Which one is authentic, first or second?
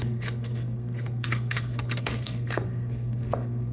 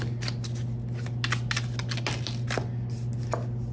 second